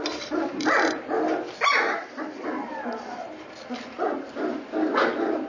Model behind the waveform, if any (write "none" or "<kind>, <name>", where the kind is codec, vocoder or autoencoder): vocoder, BigVGAN v2